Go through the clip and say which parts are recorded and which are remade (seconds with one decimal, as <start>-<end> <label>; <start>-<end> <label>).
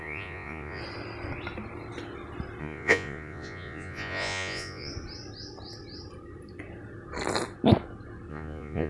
0.0-0.8 remade; 0.8-2.6 recorded; 2.6-4.9 remade; 4.9-8.3 recorded; 8.3-8.9 remade